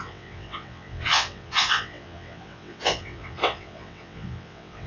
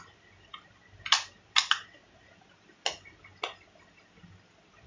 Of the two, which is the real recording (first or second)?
second